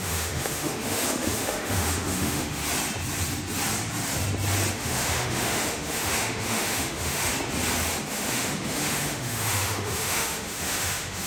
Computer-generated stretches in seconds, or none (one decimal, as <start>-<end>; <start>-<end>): 0.0-2.6; 4.7-7.3; 8.1-11.3